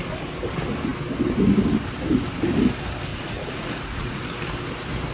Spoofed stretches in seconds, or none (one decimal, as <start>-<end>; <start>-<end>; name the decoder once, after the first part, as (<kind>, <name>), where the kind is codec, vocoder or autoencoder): 3.1-4.2 (vocoder, Vocos)